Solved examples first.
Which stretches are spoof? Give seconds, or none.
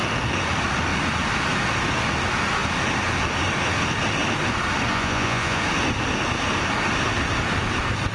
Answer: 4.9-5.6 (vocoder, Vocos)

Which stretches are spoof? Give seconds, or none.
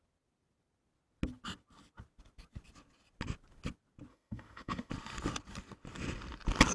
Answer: 4.1-4.9 (autoencoder, DAC-VAE)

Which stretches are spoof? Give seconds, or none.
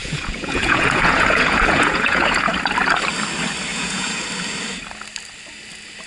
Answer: 0.0-2.5 (vocoder, Vocos); 3.7-4.2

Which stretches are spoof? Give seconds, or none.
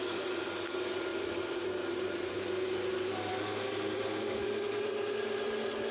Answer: none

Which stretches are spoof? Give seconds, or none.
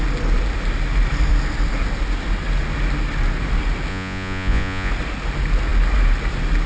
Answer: 3.9-4.9 (vocoder, Vocos)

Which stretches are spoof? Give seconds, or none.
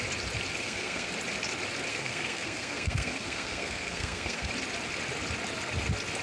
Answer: 0.6-1.1 (codec, SNAC); 1.9-4.5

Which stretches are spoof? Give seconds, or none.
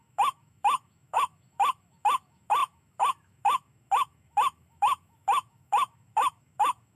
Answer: 0.0-7.0 (autoencoder, DAC-VAE)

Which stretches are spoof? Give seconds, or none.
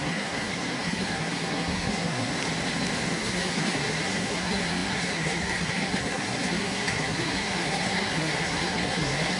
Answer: 0.0-2.3 (codec, SNAC); 3.1-9.4